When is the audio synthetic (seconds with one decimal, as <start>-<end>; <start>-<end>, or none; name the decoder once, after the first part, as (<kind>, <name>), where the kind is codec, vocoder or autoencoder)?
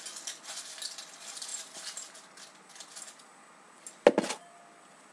none